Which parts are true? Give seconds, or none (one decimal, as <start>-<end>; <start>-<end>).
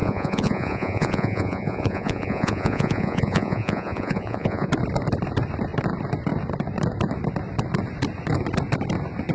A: 4.7-9.3